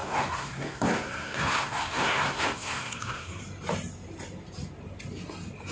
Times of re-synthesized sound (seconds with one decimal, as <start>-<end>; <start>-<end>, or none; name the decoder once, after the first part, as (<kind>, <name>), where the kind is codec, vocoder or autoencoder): 0.0-3.4 (codec, SNAC)